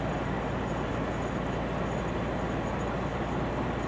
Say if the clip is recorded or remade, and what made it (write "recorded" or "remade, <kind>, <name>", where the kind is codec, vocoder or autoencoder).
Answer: recorded